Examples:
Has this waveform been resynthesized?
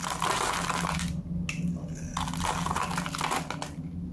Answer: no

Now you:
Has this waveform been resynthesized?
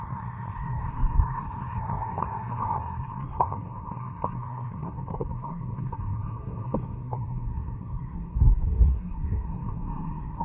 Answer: yes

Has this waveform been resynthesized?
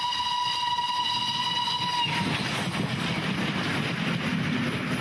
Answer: no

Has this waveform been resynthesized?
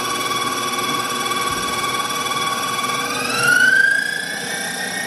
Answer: no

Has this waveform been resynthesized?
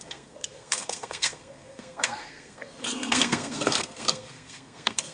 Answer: yes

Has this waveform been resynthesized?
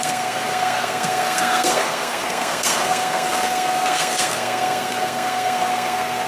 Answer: yes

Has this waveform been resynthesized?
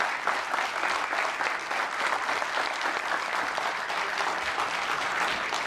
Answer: no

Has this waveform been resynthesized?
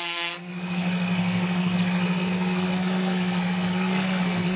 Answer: yes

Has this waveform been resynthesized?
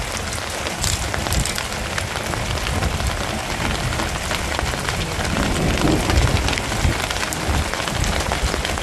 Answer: no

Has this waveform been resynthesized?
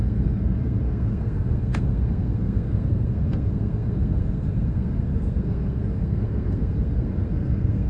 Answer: yes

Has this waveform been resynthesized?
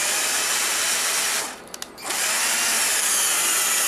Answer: no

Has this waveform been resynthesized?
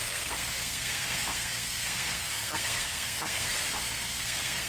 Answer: yes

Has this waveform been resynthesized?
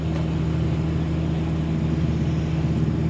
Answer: no